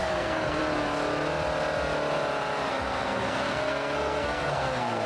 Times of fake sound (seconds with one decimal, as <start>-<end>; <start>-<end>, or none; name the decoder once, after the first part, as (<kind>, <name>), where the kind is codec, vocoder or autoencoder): 0.0-0.6 (codec, SNAC); 2.7-5.1